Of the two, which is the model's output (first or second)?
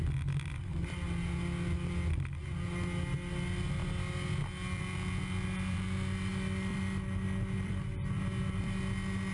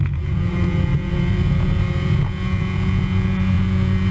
second